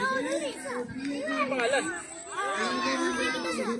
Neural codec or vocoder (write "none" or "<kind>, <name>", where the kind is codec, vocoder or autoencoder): none